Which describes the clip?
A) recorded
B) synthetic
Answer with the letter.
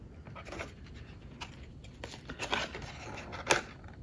A